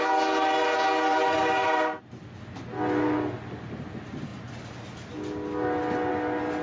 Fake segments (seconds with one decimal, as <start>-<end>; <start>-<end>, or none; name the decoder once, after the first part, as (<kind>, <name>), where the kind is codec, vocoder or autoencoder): 1.1-1.8 (vocoder, BigVGAN v2)